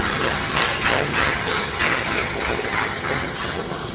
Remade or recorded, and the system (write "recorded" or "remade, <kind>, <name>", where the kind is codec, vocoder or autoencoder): remade, vocoder, HiFi-GAN